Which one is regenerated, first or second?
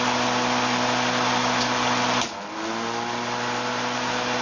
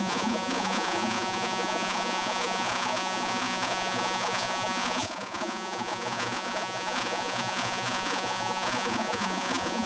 second